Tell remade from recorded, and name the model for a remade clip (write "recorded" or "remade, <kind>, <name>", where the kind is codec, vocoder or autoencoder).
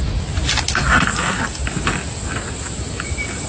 recorded